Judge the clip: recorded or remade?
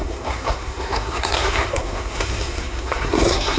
remade